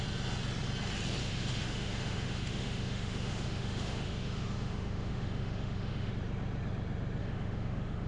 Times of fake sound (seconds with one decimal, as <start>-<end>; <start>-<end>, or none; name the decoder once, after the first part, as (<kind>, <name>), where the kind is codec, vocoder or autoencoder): 1.2-6.1 (autoencoder, DAC-VAE); 7.2-8.1